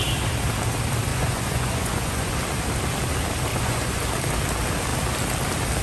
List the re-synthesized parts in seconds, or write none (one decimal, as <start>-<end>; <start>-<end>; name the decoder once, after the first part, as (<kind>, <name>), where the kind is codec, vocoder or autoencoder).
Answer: 1.1-2.3 (vocoder, Vocos); 3.5-4.0